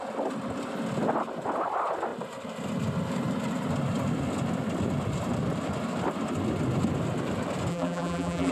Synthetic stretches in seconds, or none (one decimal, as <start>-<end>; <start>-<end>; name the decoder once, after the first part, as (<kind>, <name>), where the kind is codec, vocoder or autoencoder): 7.7-8.5 (vocoder, BigVGAN v2)